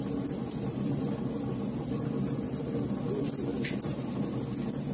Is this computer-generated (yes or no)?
no